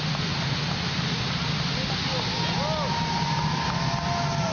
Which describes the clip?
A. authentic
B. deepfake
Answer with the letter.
A